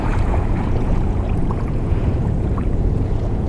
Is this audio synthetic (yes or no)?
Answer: yes